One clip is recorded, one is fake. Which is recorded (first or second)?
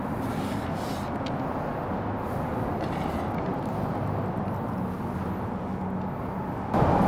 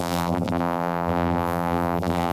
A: first